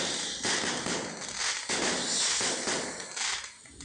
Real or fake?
real